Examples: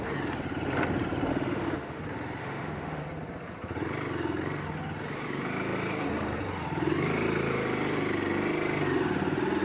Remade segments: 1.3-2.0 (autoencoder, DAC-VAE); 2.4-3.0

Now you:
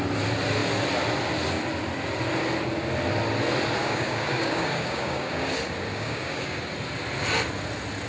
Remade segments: 3.8-5.5 (codec, DAC); 5.9-6.7

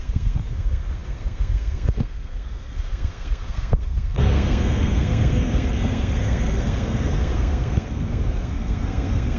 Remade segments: 0.0-9.4 (codec, SNAC)